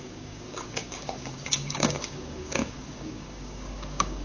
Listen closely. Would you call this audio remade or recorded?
remade